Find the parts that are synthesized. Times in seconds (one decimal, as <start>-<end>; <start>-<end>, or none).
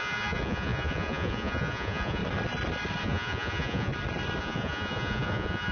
0.0-2.2; 3.0-3.9; 4.4-5.7